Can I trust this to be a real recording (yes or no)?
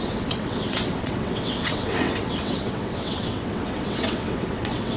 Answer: no